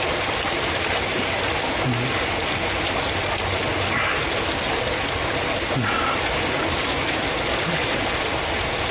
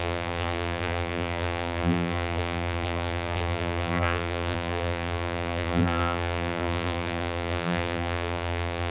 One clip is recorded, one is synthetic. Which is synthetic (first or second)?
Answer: second